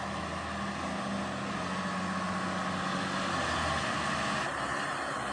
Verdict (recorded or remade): recorded